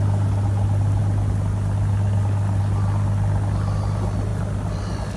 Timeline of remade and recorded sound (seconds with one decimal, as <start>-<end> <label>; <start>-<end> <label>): 0.0-5.2 recorded